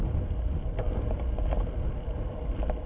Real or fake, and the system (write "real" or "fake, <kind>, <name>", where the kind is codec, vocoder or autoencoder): real